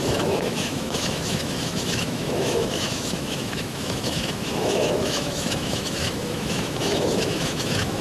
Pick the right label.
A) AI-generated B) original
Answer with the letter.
A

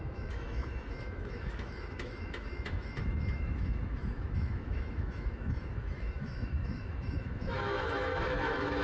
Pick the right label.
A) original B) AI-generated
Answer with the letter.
B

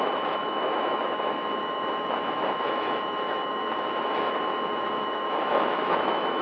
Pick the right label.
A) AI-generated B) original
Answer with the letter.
A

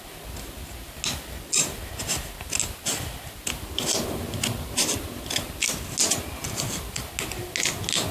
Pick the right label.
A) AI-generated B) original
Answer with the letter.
B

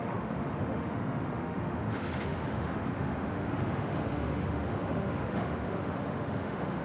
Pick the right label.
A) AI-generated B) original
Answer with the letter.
A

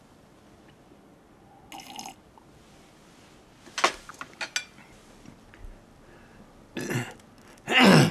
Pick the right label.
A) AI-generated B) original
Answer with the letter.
B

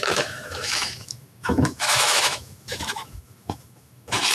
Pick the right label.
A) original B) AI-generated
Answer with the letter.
B